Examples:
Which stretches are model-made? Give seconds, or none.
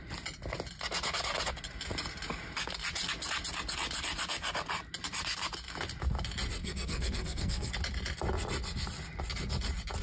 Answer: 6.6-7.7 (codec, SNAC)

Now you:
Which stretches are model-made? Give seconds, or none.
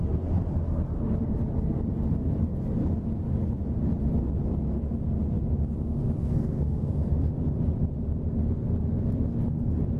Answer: 6.2-7.3 (codec, SNAC)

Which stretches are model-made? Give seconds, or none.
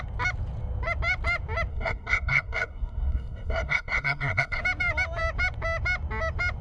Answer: 1.7-4.6 (codec, SNAC)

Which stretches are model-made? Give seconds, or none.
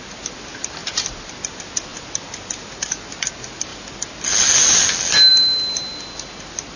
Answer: none